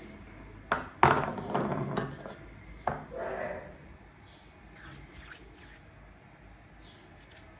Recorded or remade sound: recorded